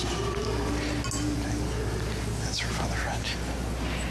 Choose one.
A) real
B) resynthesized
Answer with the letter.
A